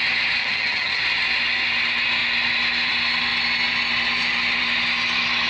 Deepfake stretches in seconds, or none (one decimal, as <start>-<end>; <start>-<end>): 0.4-1.0